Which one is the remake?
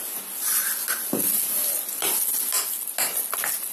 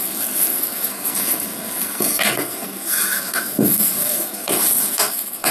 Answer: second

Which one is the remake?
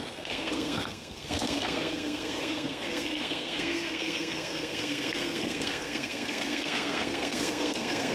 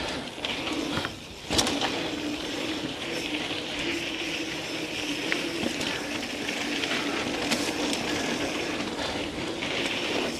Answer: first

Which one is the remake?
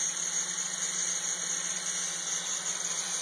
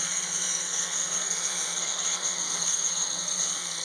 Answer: second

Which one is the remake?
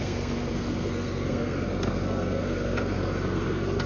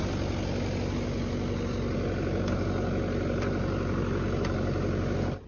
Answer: first